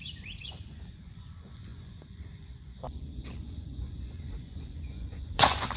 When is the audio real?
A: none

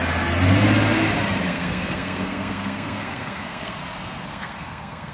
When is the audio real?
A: 0.0-1.4; 3.8-4.3